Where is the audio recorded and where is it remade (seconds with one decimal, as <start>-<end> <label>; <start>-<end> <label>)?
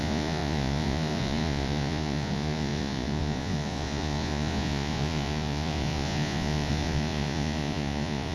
0.0-8.3 remade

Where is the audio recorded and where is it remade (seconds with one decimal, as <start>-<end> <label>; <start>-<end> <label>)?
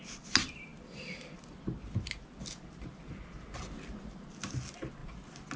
0.0-5.6 recorded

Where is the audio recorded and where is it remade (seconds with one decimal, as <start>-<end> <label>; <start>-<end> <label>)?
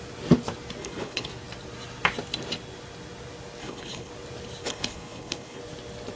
0.0-0.8 recorded; 0.8-1.3 remade; 1.3-3.6 recorded; 3.6-4.1 remade; 4.1-4.6 recorded; 4.6-5.6 remade; 5.6-6.2 recorded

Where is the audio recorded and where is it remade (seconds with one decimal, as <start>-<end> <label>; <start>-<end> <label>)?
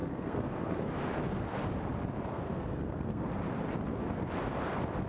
0.0-0.9 remade; 0.9-2.3 recorded; 2.3-3.3 remade; 3.3-5.1 recorded